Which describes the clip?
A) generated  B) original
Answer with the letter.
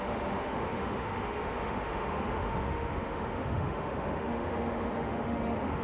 A